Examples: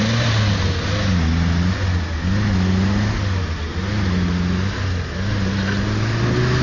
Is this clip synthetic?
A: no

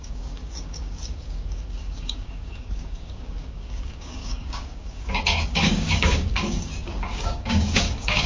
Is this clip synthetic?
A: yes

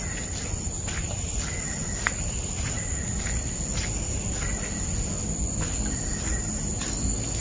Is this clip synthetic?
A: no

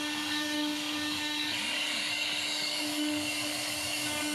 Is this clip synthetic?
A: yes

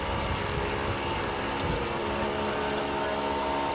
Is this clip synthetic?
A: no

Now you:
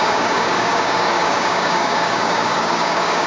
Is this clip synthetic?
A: yes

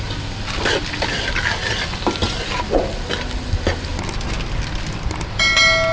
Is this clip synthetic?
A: no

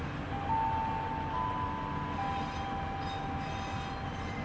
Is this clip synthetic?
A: no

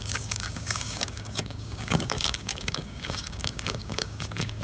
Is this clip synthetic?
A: yes